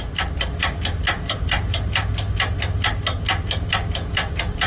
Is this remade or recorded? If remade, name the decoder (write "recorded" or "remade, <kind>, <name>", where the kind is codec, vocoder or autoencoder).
recorded